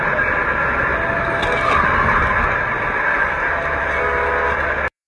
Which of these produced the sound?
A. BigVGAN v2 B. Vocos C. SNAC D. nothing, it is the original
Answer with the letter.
A